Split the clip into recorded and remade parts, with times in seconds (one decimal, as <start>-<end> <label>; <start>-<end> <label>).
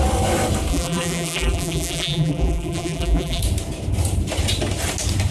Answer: 0.0-0.7 recorded; 0.7-3.4 remade; 3.4-5.3 recorded